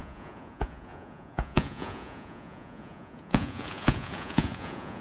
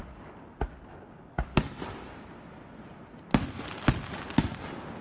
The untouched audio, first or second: second